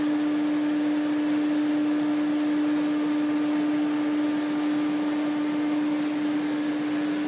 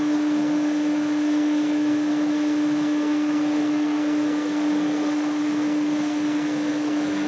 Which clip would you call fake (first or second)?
second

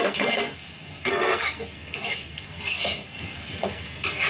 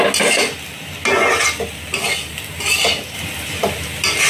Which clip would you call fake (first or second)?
first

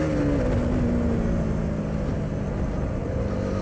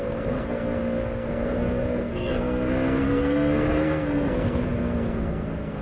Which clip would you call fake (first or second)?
second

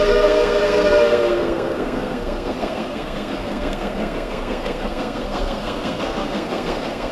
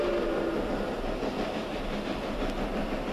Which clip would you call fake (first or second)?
first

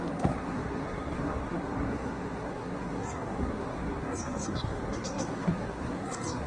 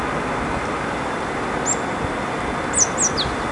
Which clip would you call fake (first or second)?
first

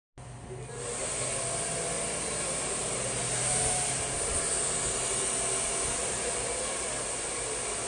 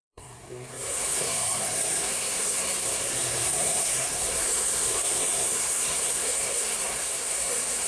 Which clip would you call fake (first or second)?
second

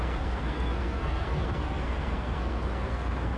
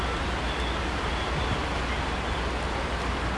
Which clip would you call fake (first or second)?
first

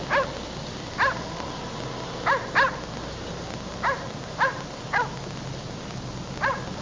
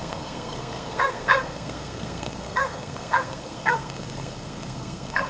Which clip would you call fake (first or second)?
second